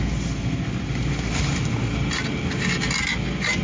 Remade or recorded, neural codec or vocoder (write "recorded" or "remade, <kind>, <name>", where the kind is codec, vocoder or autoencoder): recorded